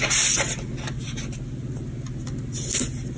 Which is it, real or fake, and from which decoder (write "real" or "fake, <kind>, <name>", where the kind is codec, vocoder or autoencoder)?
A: real